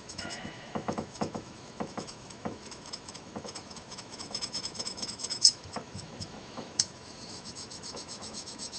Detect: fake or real fake